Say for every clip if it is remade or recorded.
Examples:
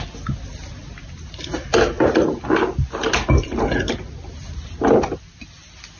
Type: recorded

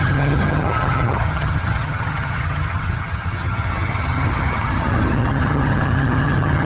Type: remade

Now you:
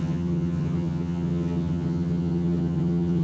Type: remade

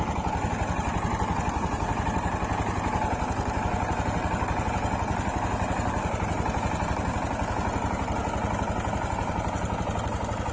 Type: recorded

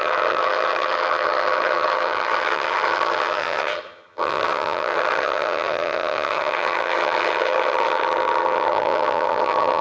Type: remade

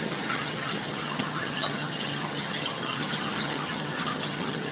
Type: remade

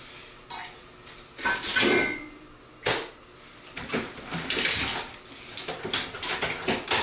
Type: recorded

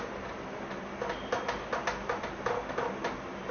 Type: recorded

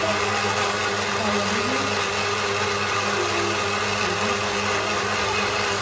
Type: recorded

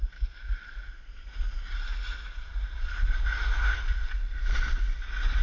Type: recorded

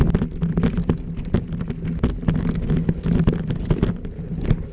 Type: recorded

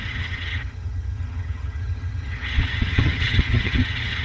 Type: remade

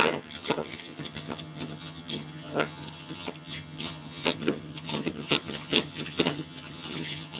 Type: remade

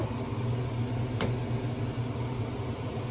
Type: recorded